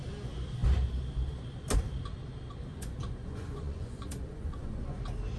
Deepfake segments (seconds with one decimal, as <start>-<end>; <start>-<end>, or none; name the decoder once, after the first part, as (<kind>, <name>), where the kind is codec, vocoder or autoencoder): 2.7-5.0 (vocoder, Vocos)